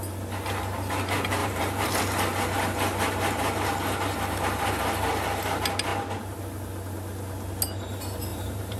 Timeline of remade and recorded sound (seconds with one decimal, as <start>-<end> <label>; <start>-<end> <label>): 0.0-1.4 recorded; 1.4-1.9 remade; 1.9-8.3 recorded; 8.3-8.8 remade